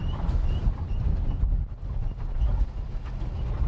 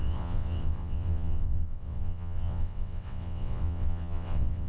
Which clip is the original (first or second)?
first